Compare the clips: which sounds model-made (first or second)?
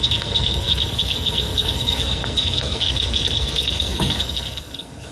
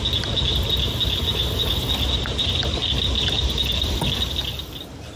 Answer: first